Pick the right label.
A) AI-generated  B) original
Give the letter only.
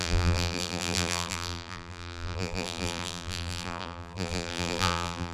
A